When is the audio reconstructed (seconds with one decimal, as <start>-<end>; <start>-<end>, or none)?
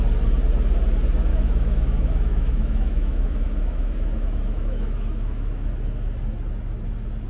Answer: 1.3-5.7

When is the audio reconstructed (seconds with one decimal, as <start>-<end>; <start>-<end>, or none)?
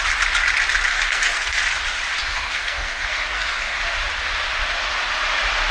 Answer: 0.9-1.6; 2.2-3.8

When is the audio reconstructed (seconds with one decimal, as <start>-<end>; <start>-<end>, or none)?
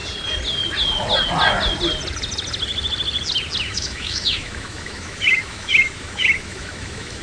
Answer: 3.6-7.2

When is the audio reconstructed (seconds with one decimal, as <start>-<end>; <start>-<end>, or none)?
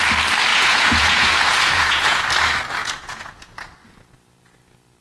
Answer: 0.5-2.2; 2.8-3.7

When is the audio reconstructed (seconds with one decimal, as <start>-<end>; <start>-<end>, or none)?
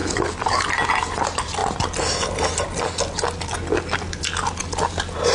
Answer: none